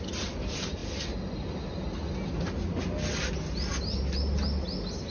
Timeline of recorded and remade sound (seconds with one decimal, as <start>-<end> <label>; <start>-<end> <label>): 0.0-5.1 recorded